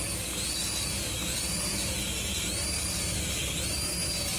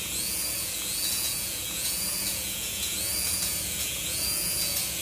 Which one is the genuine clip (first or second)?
first